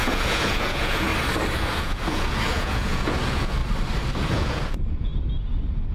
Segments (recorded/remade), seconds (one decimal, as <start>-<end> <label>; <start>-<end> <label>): 0.0-1.1 remade; 1.1-1.6 recorded; 1.6-3.6 remade; 3.6-4.2 recorded; 4.2-5.1 remade; 5.1-5.9 recorded